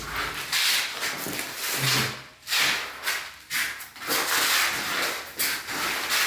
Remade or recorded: recorded